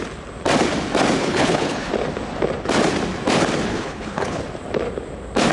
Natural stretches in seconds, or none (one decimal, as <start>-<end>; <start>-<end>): 0.0-1.2; 1.9-3.7; 4.4-5.5